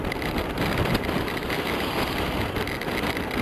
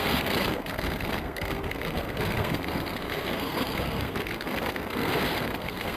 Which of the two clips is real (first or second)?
first